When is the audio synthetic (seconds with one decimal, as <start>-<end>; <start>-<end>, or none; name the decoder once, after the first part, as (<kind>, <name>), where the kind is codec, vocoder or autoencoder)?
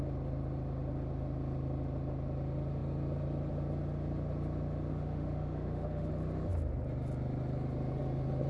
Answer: 4.9-6.1 (autoencoder, DAC-VAE)